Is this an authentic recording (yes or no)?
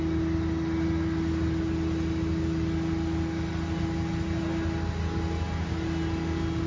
yes